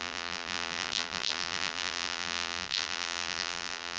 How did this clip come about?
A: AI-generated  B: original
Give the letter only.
A